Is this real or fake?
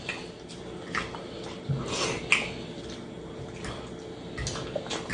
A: real